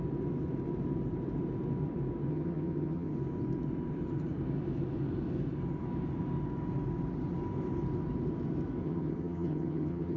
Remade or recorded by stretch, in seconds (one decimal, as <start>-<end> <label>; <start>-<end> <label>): 0.0-2.3 recorded; 2.3-3.1 remade; 3.1-8.8 recorded; 8.8-10.2 remade